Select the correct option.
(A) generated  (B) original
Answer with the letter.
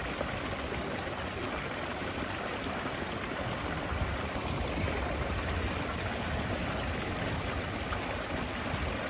B